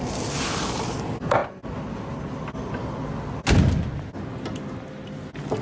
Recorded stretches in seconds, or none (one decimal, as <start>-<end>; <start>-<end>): 0.0-1.4; 2.5-5.6